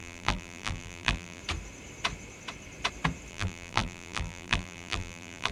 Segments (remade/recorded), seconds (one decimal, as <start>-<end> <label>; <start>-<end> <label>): 0.0-1.4 remade; 1.4-3.3 recorded; 3.3-5.5 remade